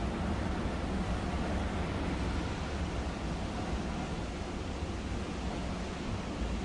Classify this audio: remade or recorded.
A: recorded